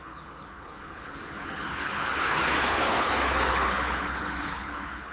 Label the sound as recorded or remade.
remade